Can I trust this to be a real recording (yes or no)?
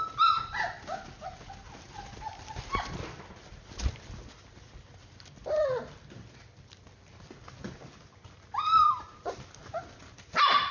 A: yes